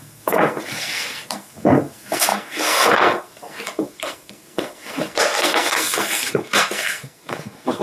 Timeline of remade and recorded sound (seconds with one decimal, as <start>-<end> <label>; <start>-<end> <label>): 0.0-7.8 remade